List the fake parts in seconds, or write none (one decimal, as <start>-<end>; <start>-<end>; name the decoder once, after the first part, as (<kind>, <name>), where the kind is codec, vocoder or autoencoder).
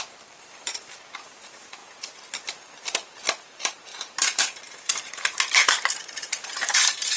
0.0-1.8 (vocoder, BigVGAN v2); 2.6-7.2